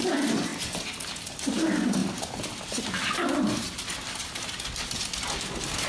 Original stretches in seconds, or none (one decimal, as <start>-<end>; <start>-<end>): 0.0-5.9